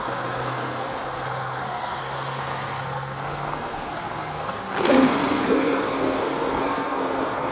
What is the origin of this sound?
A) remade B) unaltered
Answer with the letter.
A